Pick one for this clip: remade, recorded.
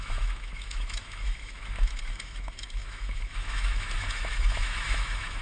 remade